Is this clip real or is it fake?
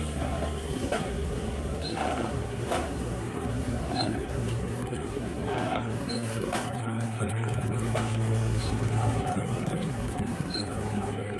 fake